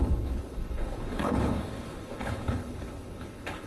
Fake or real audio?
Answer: fake